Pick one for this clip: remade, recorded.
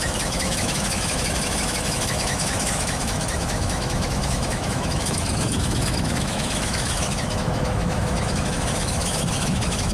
remade